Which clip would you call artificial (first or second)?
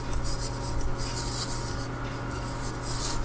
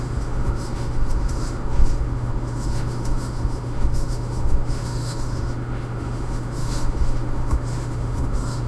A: second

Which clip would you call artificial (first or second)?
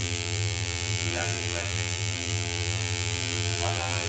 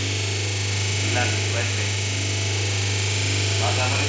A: first